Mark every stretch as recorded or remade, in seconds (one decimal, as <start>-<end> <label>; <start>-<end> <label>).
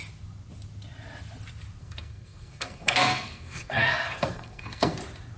0.0-1.8 recorded; 1.8-5.0 remade; 5.0-5.4 recorded